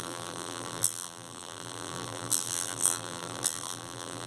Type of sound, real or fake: fake